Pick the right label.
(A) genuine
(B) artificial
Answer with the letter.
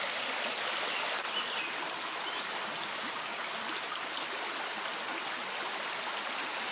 A